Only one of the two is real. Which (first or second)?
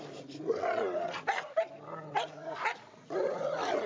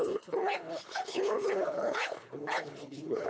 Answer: first